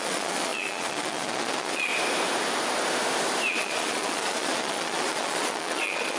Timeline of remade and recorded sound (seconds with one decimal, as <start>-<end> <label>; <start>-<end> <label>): 0.0-1.9 remade; 1.9-3.5 recorded; 3.5-6.2 remade